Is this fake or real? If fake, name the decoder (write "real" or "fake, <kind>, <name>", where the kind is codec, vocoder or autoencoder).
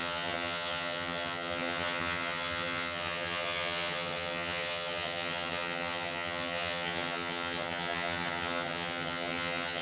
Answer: fake, vocoder, HiFi-GAN